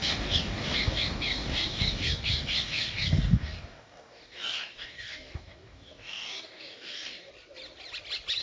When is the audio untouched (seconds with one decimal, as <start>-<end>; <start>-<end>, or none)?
7.3-8.4